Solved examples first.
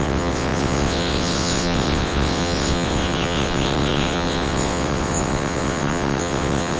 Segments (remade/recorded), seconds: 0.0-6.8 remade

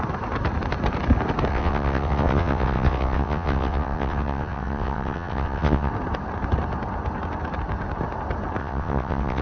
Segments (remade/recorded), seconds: 0.0-1.5 recorded; 1.5-5.9 remade; 5.9-8.6 recorded; 8.6-9.4 remade

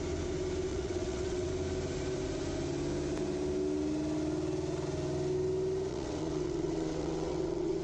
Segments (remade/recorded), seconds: 0.0-0.7 recorded; 0.7-1.5 remade; 1.5-5.9 recorded; 5.9-7.8 remade

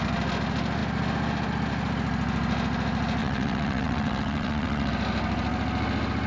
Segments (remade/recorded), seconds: 0.0-3.2 recorded; 3.2-4.9 remade; 4.9-6.3 recorded

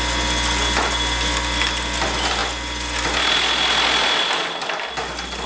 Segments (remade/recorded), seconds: 0.0-5.5 recorded

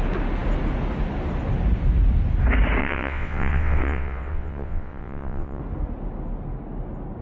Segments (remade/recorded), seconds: 0.0-2.8 recorded; 2.8-5.6 remade; 5.6-7.2 recorded